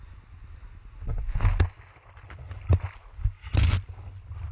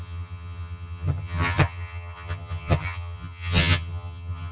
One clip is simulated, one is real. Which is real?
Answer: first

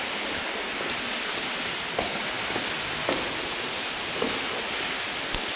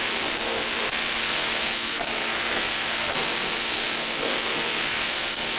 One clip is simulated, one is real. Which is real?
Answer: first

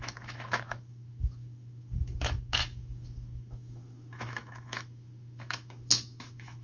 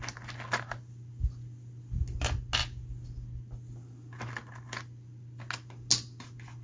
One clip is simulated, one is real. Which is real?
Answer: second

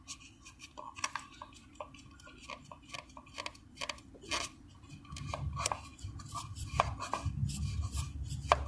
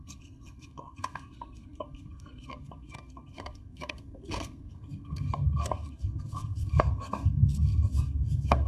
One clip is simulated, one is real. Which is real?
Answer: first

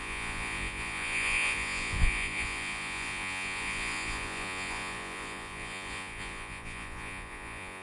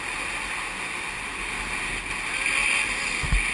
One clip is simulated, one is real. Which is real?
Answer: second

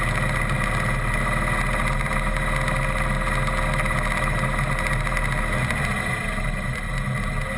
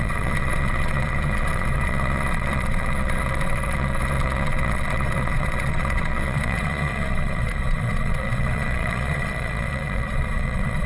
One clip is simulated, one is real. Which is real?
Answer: first